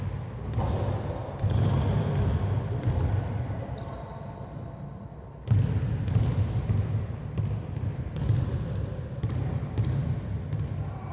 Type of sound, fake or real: real